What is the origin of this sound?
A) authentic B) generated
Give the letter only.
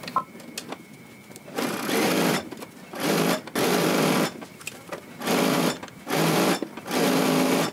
A